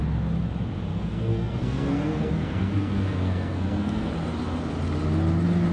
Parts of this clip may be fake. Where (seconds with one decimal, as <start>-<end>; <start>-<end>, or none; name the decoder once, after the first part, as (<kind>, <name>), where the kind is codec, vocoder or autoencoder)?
0.9-4.1 (codec, SNAC)